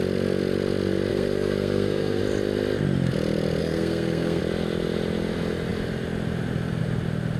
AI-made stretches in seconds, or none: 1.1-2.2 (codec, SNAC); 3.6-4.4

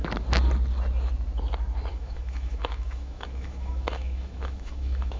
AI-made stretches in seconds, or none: 1.9-5.2 (autoencoder, DAC-VAE)

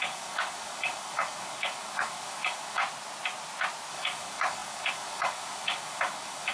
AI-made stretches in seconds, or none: 0.0-2.8 (codec, DAC); 3.9-6.5

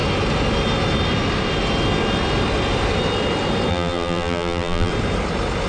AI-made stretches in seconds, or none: 3.7-4.9 (vocoder, BigVGAN v2)